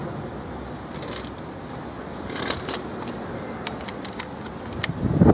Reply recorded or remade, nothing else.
recorded